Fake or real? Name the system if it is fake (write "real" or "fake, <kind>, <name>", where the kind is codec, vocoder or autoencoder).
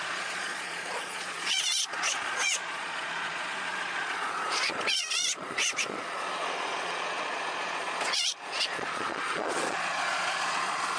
fake, vocoder, Vocos